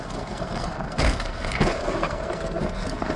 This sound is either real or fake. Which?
fake